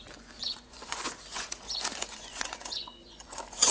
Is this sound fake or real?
fake